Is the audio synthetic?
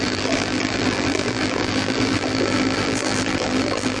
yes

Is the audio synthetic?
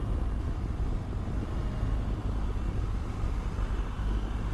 yes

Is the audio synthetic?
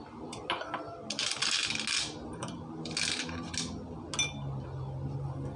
no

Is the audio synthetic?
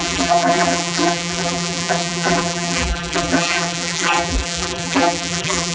yes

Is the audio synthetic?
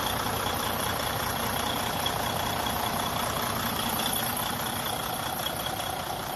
yes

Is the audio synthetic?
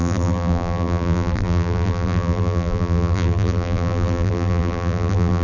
yes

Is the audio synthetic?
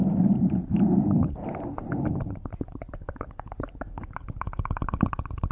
yes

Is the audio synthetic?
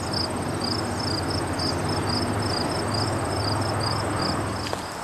no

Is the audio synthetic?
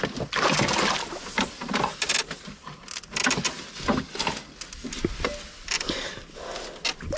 no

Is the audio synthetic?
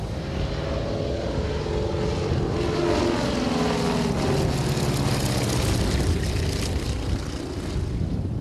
no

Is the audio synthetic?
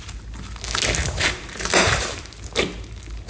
no